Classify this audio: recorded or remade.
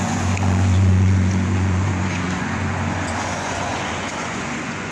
remade